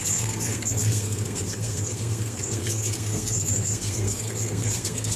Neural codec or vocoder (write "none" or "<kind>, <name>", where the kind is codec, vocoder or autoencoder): codec, SNAC